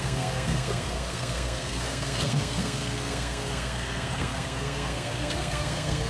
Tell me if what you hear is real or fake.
fake